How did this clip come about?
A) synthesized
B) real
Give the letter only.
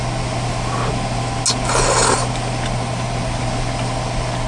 B